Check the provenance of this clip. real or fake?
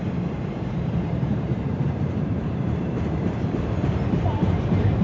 fake